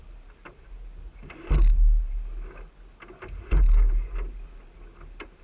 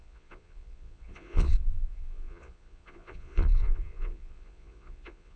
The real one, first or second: first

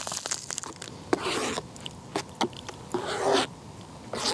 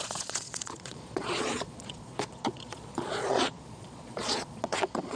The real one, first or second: first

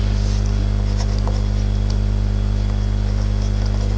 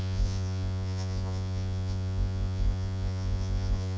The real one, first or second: first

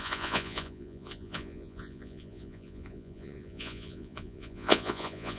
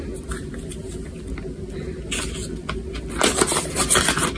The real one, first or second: second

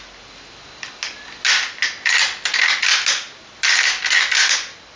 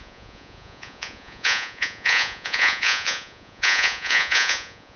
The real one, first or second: first